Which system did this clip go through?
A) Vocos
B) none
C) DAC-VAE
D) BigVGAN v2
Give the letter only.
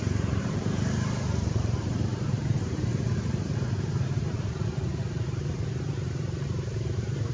D